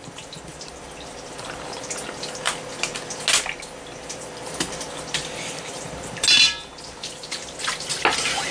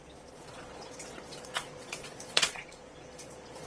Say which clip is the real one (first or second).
first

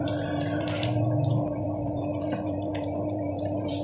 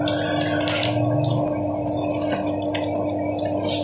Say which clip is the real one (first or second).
second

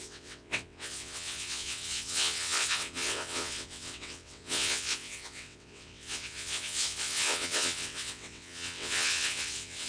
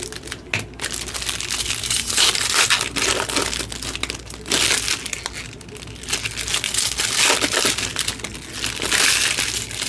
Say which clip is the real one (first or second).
second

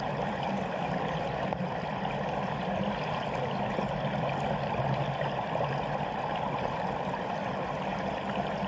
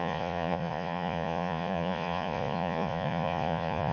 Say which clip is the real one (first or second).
first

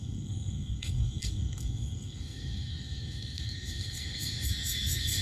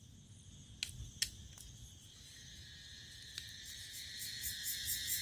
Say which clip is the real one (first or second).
second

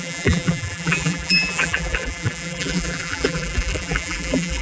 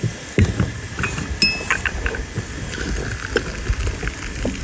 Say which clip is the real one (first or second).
second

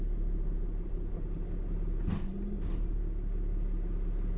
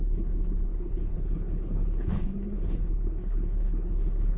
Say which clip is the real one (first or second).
first